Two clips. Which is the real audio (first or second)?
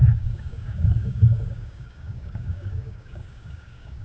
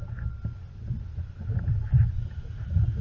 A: second